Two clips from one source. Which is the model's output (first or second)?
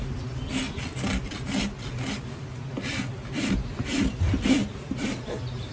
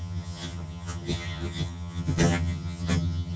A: second